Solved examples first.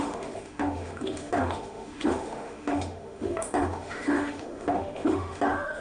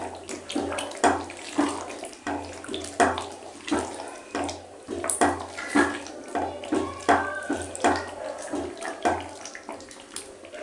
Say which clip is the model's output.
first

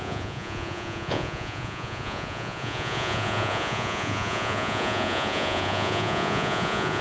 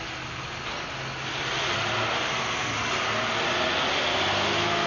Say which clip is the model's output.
first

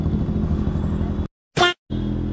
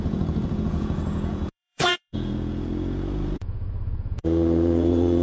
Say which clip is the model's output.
second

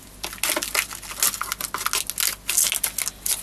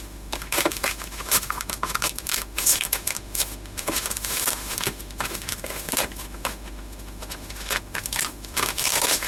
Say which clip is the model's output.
second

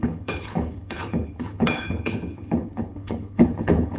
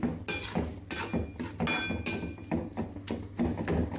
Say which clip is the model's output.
first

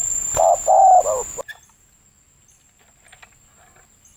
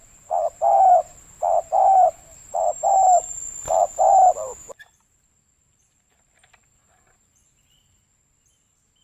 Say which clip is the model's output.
second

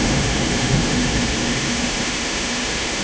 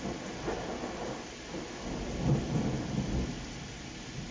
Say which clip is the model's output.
first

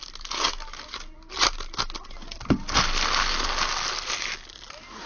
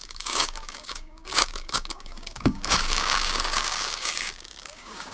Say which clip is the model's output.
second